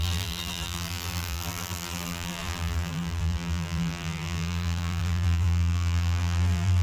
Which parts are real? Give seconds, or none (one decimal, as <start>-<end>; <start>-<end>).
none